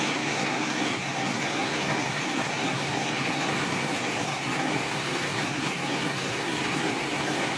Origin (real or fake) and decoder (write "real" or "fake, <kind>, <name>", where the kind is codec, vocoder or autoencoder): fake, codec, SNAC